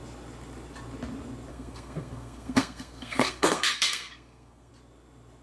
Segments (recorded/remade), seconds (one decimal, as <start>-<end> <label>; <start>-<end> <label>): 0.0-1.5 recorded; 1.5-4.7 remade; 4.7-5.4 recorded